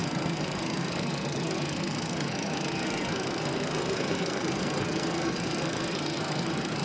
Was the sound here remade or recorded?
remade